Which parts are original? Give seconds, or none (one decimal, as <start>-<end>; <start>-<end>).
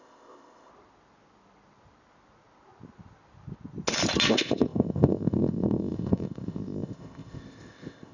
0.7-4.3